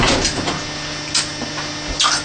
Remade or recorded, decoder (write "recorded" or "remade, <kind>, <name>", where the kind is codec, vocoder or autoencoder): recorded